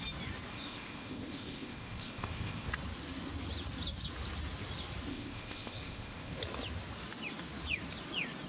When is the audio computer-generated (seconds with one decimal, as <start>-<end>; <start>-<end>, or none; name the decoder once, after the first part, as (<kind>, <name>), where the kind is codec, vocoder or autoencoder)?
0.5-2.7 (codec, ZipCodec); 5.1-6.4